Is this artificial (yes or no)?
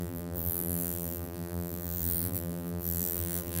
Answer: yes